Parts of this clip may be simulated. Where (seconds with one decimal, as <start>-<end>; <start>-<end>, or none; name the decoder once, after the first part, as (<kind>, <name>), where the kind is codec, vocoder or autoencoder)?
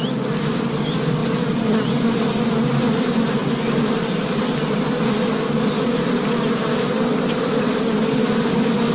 none